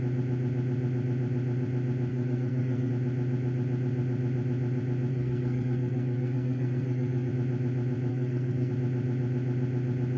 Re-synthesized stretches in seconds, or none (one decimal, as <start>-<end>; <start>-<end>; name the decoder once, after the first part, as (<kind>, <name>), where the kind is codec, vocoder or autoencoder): 2.1-2.9 (codec, SNAC); 5.1-7.3; 8.1-8.7